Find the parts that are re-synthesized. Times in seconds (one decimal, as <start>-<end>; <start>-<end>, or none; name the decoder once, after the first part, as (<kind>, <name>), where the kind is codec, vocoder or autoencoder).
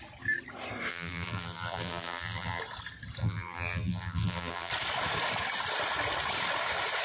0.9-2.6 (vocoder, BigVGAN v2); 3.2-4.7